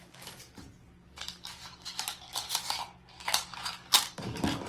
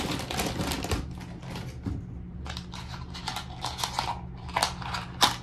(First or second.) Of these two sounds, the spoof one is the first